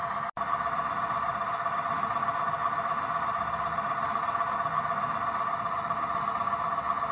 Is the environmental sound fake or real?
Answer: real